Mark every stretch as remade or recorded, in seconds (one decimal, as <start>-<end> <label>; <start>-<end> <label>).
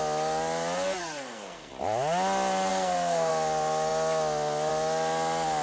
0.0-1.0 recorded; 1.0-1.7 remade; 1.7-2.7 recorded; 2.7-3.3 remade; 3.3-5.6 recorded